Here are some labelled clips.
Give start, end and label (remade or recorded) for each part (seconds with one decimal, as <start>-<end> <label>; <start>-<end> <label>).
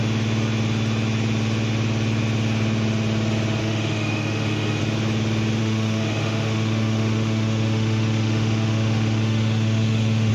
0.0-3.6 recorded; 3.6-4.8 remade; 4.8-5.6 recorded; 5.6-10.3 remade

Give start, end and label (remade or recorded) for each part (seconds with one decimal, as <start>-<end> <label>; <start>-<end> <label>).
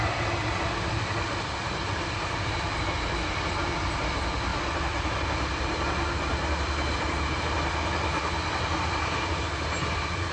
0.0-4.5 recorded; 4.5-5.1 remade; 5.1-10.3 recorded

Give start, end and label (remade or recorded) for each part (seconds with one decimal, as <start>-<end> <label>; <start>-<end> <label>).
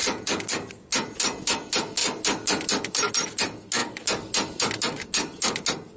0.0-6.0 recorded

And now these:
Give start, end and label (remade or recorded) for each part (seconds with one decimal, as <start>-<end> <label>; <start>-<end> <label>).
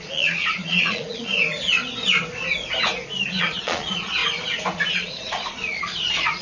0.0-1.3 remade; 1.3-3.4 recorded; 3.4-4.2 remade; 4.2-4.9 recorded; 4.9-6.4 remade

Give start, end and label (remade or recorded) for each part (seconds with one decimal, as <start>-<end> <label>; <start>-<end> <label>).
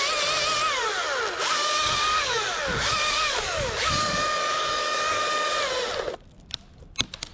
0.0-1.4 recorded; 1.4-5.5 remade; 5.5-7.3 recorded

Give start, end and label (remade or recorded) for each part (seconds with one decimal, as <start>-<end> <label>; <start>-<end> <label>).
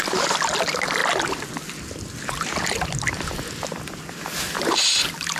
0.0-5.4 recorded